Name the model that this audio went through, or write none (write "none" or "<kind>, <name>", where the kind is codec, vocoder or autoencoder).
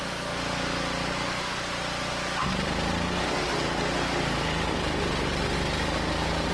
none